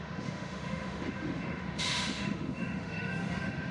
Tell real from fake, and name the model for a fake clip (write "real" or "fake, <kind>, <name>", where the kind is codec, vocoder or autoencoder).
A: fake, autoencoder, DAC-VAE